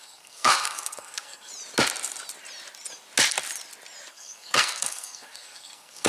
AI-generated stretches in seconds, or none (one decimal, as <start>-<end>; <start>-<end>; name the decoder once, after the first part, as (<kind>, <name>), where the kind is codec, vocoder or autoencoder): 0.0-1.5 (codec, SNAC); 4.1-6.1